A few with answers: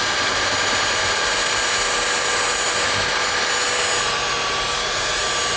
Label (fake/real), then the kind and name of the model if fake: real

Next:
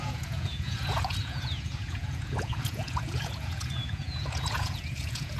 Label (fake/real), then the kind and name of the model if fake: fake, vocoder, Vocos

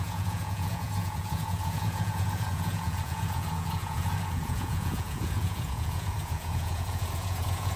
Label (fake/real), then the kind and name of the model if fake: fake, vocoder, Vocos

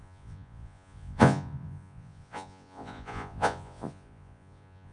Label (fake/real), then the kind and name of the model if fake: fake, vocoder, Vocos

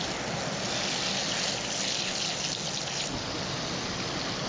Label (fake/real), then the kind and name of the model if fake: real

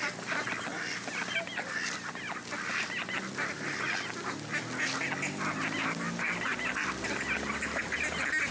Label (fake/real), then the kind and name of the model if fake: real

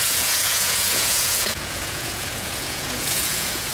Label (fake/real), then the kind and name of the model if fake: fake, vocoder, Vocos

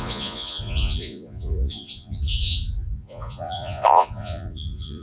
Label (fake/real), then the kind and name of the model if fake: fake, vocoder, Vocos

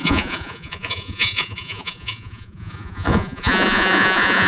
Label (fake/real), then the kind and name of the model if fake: fake, vocoder, Vocos